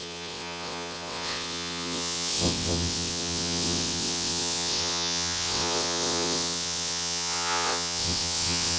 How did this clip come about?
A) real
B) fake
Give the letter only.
B